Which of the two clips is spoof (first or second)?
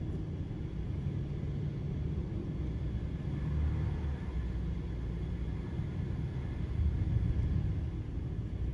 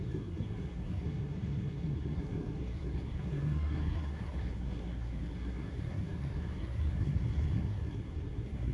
second